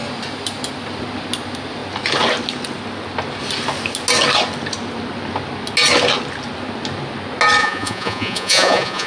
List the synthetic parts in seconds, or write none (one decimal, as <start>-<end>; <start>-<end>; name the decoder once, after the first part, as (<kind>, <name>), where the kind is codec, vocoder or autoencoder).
7.6-9.1 (vocoder, Vocos)